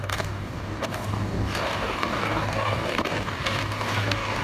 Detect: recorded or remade remade